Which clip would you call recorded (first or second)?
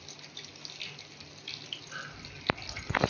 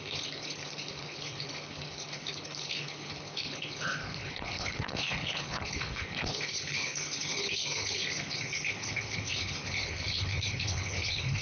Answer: first